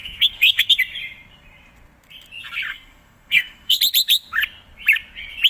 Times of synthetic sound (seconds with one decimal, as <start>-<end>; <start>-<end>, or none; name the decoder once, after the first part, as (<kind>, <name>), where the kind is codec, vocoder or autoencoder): 0.0-0.8 (codec, SNAC); 2.7-3.8